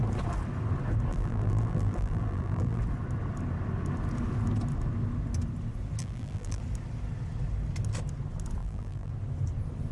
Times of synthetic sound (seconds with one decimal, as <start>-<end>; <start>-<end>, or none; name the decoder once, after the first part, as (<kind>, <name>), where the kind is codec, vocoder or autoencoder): 1.1-2.8 (vocoder, BigVGAN v2); 6.0-6.6; 8.6-9.1